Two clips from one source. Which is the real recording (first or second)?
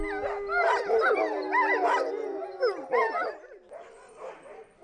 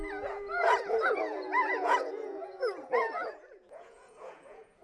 first